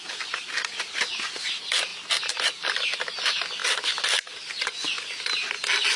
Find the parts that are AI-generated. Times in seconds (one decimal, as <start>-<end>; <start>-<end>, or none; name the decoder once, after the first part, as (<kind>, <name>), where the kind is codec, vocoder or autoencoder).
none